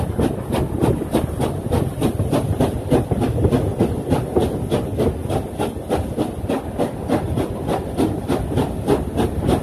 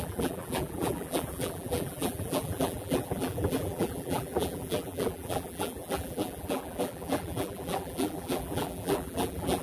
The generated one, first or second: second